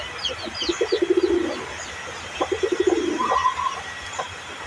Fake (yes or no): no